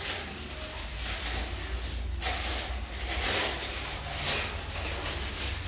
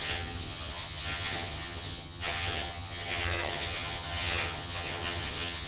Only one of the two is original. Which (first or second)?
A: first